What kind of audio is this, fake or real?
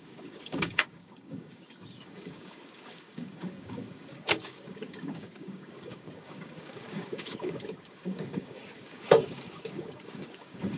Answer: fake